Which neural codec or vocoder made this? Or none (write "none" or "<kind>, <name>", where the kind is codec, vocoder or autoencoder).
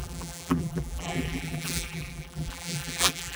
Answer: vocoder, BigVGAN v2